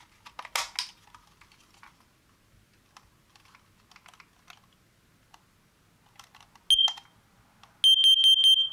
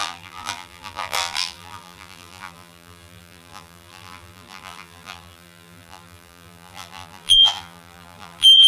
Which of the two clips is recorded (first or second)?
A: first